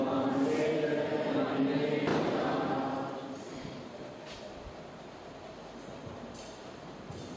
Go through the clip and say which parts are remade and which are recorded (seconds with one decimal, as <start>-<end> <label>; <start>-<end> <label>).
0.0-7.4 recorded